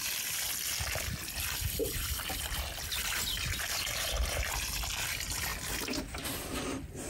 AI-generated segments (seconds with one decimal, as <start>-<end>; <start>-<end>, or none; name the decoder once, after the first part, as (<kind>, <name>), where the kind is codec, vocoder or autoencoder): 1.8-4.5 (vocoder, BigVGAN v2); 5.5-6.2